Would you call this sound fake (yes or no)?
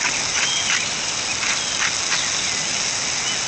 no